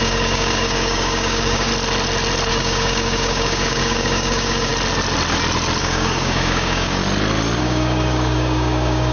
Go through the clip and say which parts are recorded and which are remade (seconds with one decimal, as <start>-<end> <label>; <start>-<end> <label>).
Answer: 0.0-1.7 remade; 1.7-2.5 recorded; 2.5-4.7 remade; 4.7-5.8 recorded; 5.8-7.0 remade; 7.0-7.6 recorded; 7.6-9.1 remade

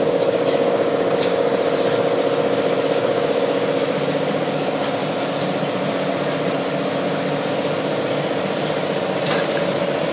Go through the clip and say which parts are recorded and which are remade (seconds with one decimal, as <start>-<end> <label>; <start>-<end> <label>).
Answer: 0.0-1.5 remade; 1.5-2.9 recorded; 2.9-5.0 remade; 5.0-10.1 recorded

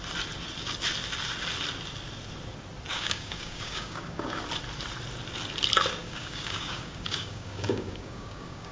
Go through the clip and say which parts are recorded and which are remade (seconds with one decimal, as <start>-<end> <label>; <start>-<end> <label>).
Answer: 0.0-2.9 recorded; 2.9-4.4 remade; 4.4-6.0 recorded; 6.0-8.7 remade

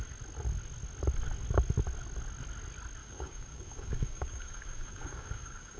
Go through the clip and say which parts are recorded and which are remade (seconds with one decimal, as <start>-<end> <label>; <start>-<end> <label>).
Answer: 0.0-3.0 recorded; 3.0-5.8 remade

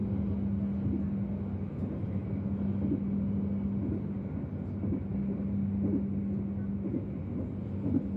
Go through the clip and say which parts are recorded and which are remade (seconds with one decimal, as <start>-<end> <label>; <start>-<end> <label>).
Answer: 0.0-8.2 recorded

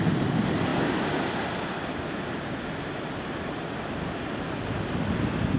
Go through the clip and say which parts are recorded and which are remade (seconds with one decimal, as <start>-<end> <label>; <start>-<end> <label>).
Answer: 0.0-5.6 recorded